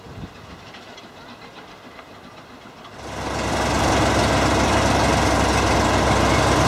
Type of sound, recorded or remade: recorded